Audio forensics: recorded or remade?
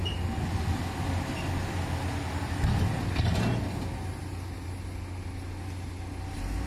recorded